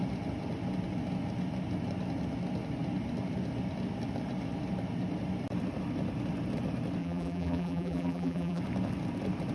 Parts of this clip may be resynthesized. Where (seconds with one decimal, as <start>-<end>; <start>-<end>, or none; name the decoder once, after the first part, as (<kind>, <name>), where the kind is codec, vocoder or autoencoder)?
7.0-8.6 (vocoder, BigVGAN v2)